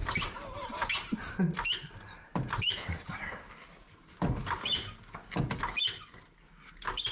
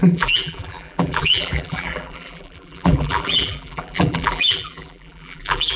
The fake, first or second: second